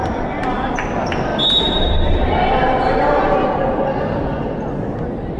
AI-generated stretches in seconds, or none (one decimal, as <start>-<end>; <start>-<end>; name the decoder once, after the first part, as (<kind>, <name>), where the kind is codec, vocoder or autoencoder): 0.0-0.9 (vocoder, BigVGAN v2); 1.3-3.8